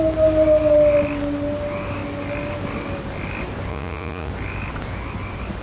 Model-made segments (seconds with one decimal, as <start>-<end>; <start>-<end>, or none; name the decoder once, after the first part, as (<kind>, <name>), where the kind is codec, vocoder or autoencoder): 3.7-4.3 (vocoder, Vocos)